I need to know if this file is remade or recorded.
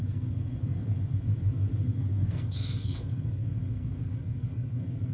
remade